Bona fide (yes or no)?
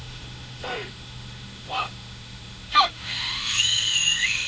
no